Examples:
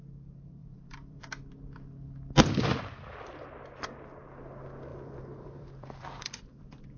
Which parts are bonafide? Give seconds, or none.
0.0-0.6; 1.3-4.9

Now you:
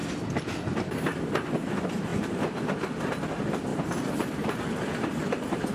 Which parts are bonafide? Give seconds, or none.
0.0-2.1; 2.6-3.7; 4.6-5.7

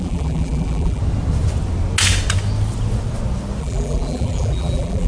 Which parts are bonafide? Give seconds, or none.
1.0-3.6

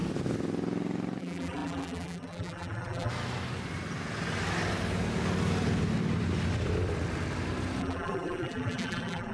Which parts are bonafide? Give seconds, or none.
0.0-1.2; 3.1-7.8